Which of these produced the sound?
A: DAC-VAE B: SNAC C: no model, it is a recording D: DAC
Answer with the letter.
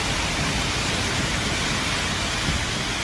C